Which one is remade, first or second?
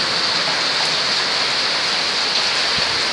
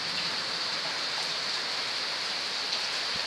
second